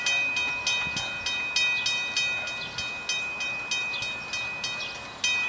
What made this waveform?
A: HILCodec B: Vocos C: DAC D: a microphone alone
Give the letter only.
D